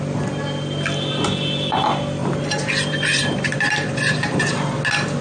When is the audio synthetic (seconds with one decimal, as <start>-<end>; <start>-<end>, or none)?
2.2-4.6